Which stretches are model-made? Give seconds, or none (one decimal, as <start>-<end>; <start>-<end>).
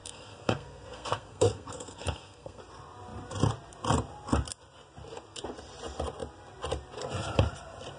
0.0-2.6